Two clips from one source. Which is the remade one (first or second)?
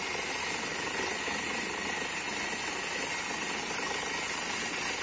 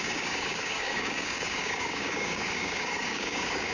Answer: second